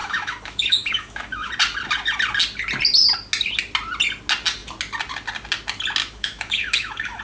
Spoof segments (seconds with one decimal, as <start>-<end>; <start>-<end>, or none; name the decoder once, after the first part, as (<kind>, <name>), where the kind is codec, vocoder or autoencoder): 0.0-1.5 (autoencoder, DAC-VAE); 6.0-7.2